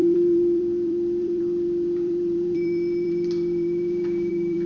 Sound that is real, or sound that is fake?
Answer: fake